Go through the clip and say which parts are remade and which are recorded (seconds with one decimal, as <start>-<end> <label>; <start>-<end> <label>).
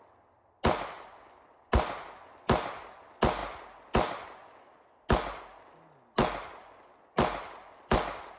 0.0-8.4 recorded